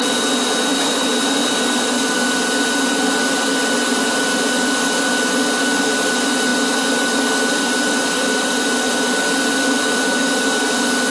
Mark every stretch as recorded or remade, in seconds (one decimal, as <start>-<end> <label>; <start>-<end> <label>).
0.0-0.7 recorded; 0.7-1.2 remade; 1.2-3.6 recorded; 3.6-4.2 remade; 4.2-11.1 recorded